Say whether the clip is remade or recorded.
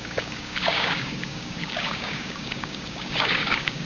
remade